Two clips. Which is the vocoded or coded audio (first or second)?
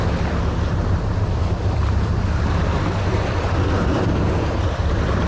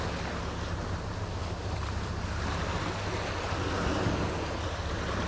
first